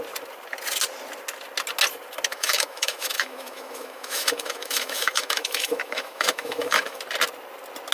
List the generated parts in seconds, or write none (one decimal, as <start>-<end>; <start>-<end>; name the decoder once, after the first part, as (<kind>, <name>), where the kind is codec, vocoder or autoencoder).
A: 2.3-7.0 (autoencoder, DAC-VAE)